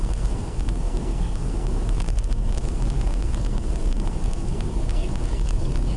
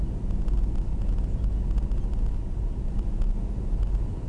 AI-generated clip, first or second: first